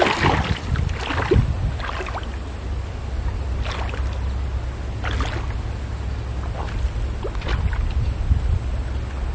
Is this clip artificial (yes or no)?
no